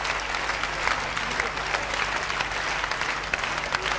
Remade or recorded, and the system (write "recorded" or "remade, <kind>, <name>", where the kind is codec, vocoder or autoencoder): recorded